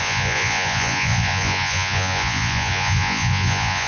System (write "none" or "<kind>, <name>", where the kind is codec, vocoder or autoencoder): vocoder, Vocos